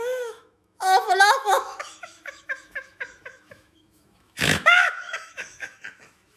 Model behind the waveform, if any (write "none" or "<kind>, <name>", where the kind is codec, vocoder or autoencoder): autoencoder, DAC-VAE